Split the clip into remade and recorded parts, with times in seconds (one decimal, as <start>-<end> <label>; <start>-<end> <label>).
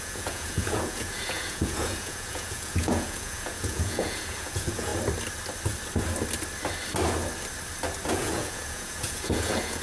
0.0-4.9 remade; 4.9-8.1 recorded; 8.1-9.8 remade